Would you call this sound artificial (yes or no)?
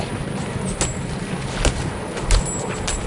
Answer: no